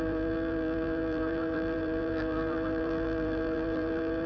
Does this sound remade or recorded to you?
remade